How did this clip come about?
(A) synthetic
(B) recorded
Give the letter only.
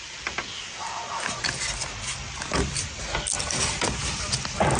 B